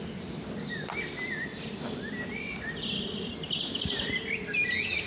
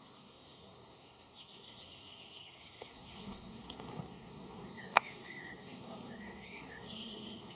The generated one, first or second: second